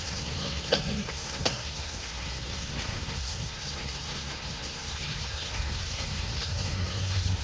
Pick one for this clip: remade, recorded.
remade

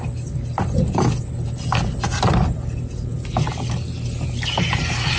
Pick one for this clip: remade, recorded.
recorded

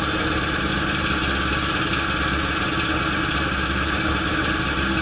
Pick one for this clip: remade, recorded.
recorded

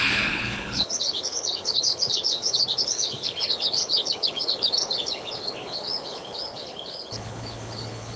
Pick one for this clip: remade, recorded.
remade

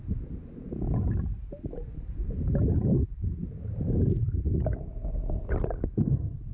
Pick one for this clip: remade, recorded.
recorded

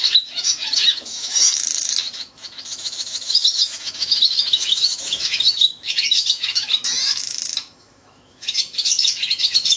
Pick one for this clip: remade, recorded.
remade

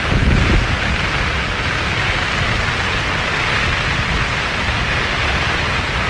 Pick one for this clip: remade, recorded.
recorded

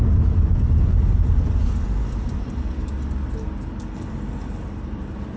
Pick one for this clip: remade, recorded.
recorded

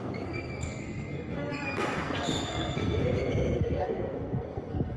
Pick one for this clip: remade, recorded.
remade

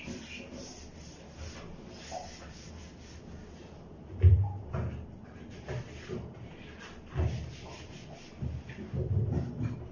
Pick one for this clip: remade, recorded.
recorded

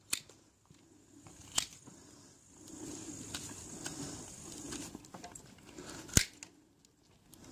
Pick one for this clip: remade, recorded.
recorded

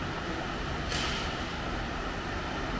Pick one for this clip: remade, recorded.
recorded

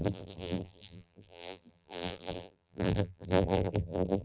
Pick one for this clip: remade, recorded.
remade